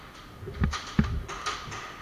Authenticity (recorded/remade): recorded